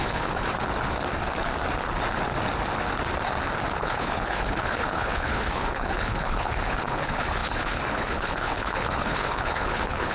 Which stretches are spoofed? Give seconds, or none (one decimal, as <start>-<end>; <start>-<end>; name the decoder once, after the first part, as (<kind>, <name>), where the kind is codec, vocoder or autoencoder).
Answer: 0.0-0.4 (codec, HILCodec); 3.8-10.1